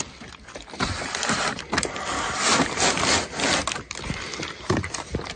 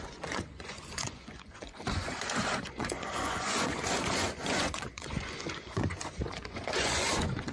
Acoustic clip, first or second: first